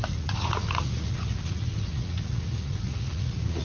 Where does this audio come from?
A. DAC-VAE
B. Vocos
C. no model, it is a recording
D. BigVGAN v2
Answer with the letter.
B